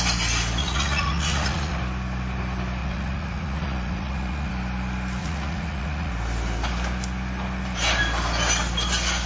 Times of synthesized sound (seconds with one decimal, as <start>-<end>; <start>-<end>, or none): 0.6-1.8; 2.8-4.5; 5.2-6.1